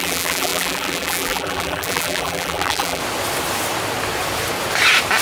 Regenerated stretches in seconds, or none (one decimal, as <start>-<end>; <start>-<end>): 0.0-3.0